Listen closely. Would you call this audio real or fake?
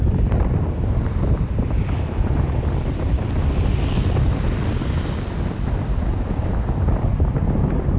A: real